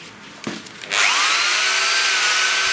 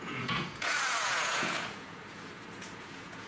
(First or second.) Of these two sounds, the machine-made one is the second